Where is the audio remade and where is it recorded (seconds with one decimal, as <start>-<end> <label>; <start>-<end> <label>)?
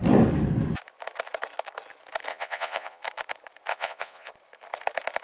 0.0-2.3 recorded; 2.3-3.0 remade; 3.0-3.7 recorded; 3.7-4.3 remade; 4.3-5.2 recorded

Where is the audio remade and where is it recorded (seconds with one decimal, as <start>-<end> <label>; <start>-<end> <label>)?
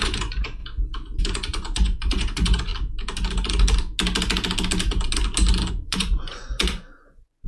0.0-0.6 remade; 0.6-1.2 recorded; 1.2-2.7 remade; 2.7-5.7 recorded; 5.7-7.5 remade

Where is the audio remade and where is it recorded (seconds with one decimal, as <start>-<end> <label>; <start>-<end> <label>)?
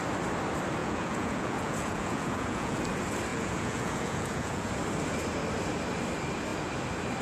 0.0-0.8 recorded; 0.8-2.8 remade; 2.8-3.3 recorded; 3.3-4.7 remade; 4.7-7.2 recorded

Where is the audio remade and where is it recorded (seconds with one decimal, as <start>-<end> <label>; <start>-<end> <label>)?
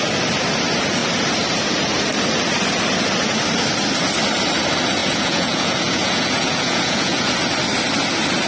0.0-5.0 recorded; 5.0-7.3 remade; 7.3-8.5 recorded